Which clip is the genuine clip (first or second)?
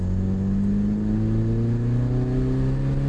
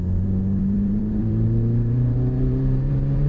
first